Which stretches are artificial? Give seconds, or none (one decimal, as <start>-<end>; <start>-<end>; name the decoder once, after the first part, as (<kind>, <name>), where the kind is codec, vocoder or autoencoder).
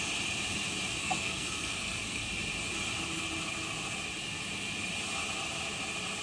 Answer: 1.0-2.2 (codec, SNAC)